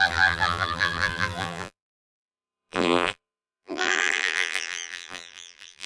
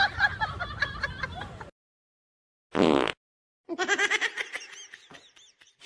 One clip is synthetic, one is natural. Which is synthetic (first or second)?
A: first